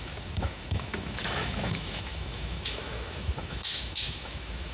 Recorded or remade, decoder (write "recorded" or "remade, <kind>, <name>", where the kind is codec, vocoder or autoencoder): remade, autoencoder, DAC-VAE